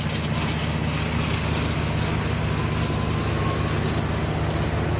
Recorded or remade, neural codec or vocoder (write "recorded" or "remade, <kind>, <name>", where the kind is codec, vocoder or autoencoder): recorded